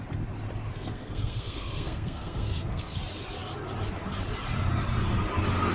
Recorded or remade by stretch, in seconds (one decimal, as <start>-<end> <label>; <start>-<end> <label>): 0.0-0.7 recorded; 0.7-3.0 remade; 3.0-5.7 recorded